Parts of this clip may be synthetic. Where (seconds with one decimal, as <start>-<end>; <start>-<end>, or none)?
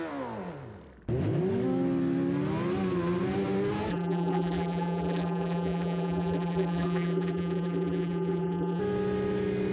3.9-8.8